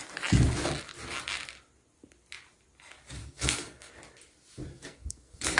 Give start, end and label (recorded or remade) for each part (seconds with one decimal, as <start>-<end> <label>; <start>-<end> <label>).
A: 0.0-3.2 recorded; 3.2-3.9 remade; 3.9-4.7 recorded; 4.7-5.6 remade